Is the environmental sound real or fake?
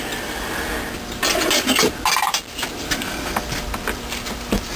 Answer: real